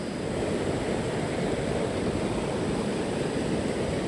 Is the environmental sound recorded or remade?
recorded